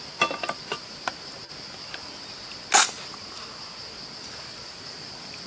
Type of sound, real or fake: real